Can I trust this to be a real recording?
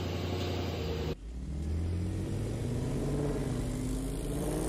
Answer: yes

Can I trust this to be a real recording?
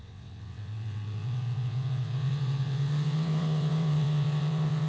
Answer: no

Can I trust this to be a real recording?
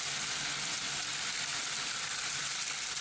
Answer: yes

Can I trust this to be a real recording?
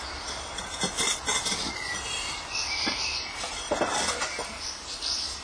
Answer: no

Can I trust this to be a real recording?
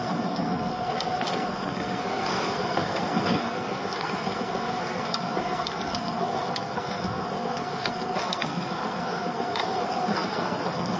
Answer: no